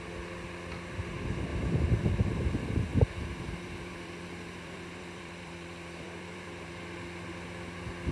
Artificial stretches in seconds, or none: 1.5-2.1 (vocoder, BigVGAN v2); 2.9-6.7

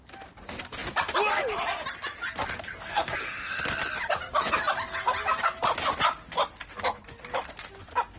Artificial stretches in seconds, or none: 2.9-3.6 (codec, SNAC)

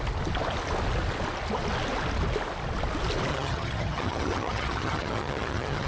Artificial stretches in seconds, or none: 3.3-5.9 (vocoder, HiFi-GAN)

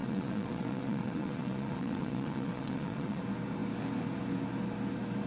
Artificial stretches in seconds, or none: 0.0-3.2 (vocoder, WaveNeXt)

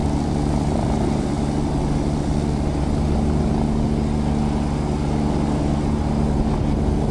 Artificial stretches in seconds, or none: 0.0-2.8 (vocoder, BigVGAN v2)

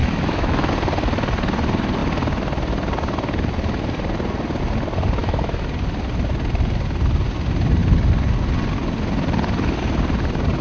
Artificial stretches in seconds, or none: 0.0-0.7 (autoencoder, DAC-VAE); 5.2-5.7

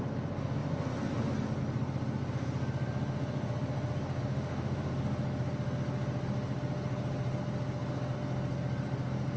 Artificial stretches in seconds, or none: 4.3-4.9 (autoencoder, DAC-VAE)

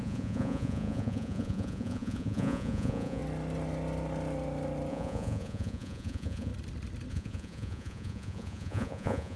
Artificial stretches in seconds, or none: 0.0-3.2 (vocoder, Vocos); 4.9-6.5; 7.1-9.4